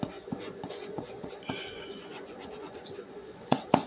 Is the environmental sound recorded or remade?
remade